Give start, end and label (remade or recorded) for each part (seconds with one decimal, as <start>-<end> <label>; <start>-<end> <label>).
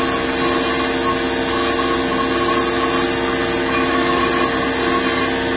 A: 0.0-3.6 recorded; 3.6-4.2 remade; 4.2-5.6 recorded